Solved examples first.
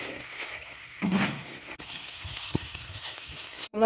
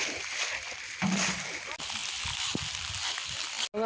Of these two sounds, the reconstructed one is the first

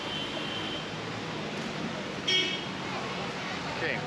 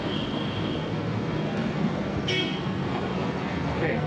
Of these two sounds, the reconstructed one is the second